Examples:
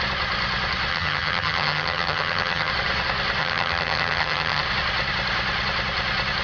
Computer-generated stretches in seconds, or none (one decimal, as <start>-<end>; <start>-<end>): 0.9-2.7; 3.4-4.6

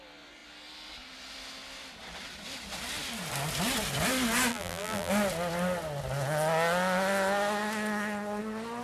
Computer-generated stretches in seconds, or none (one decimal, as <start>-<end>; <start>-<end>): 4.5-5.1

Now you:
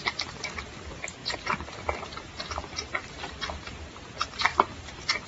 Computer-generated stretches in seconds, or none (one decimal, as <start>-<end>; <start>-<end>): 3.0-4.1; 4.5-5.3

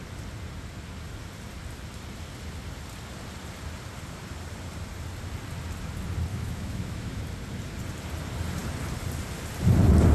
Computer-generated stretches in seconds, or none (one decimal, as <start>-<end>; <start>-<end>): 6.3-7.2